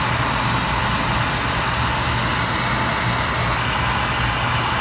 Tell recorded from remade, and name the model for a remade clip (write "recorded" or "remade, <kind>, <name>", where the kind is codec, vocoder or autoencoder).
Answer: recorded